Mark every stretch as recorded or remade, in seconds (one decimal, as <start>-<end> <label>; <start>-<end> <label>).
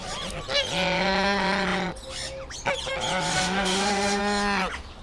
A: 0.0-3.3 recorded; 3.3-4.2 remade; 4.2-5.0 recorded